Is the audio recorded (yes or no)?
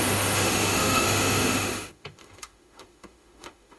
no